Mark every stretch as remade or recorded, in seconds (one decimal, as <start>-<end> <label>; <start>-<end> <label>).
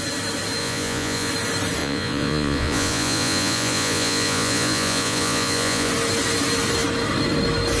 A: 0.0-0.6 recorded; 0.6-1.3 remade; 1.3-1.8 recorded; 1.8-5.9 remade; 5.9-7.8 recorded